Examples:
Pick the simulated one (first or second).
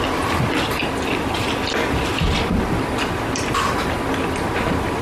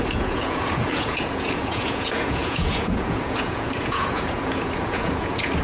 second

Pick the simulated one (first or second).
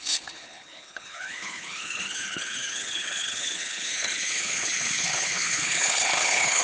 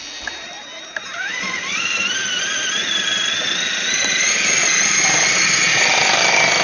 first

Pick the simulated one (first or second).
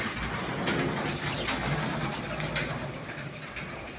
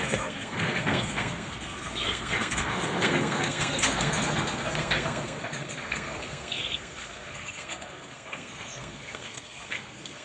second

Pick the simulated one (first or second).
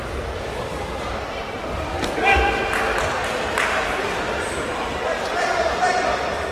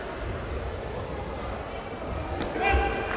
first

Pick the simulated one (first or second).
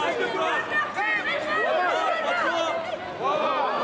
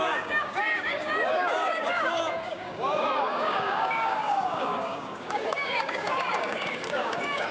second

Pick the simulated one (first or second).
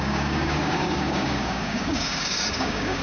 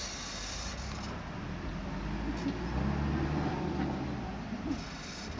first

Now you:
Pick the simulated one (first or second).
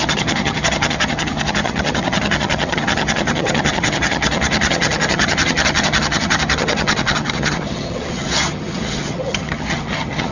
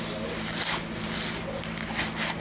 first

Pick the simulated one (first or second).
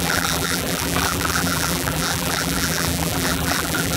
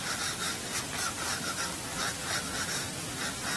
first